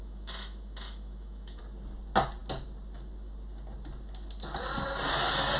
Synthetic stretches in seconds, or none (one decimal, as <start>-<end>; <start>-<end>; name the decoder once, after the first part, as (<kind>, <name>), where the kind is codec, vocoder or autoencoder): 0.0-1.6 (autoencoder, DAC-VAE)